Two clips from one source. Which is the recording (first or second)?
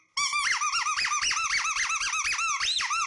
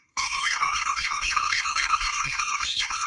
first